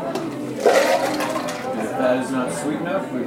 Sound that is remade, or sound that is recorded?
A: recorded